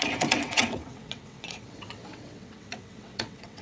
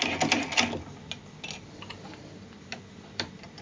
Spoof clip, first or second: first